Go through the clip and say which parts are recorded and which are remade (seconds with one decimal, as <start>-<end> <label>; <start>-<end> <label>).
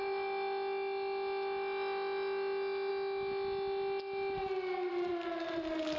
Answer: 0.0-6.0 recorded